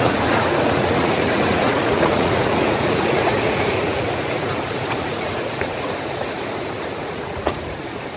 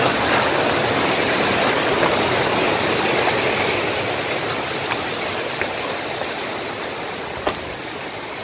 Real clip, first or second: second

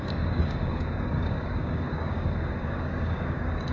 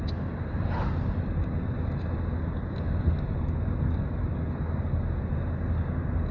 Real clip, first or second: second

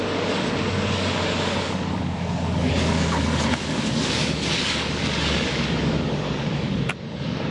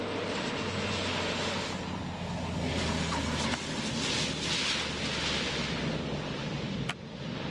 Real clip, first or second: second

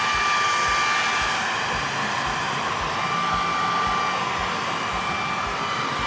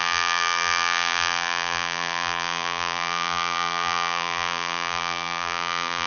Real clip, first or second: first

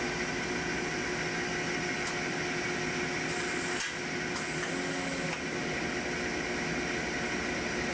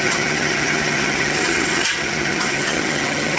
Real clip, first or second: first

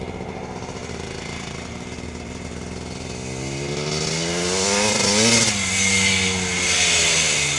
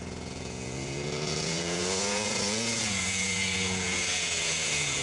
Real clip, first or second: first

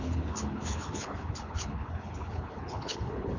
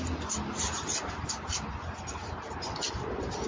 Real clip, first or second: second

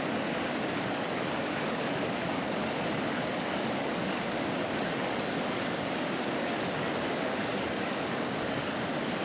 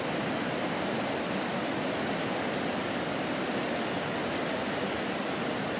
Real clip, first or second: second